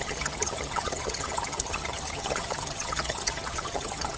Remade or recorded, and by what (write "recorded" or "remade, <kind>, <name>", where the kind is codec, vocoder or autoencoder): remade, vocoder, HiFi-GAN